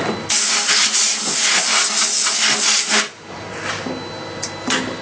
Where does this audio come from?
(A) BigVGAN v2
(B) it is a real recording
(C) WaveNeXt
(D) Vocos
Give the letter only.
B